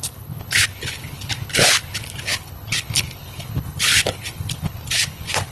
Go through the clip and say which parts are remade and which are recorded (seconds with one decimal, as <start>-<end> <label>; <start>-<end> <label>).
0.0-5.5 remade